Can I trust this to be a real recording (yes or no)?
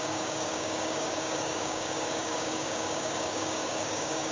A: no